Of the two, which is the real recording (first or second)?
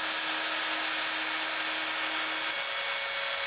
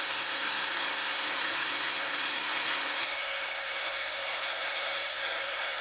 first